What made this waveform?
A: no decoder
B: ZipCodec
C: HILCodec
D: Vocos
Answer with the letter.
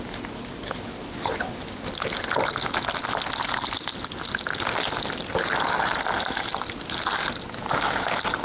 A